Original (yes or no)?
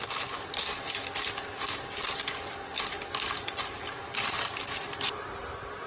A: yes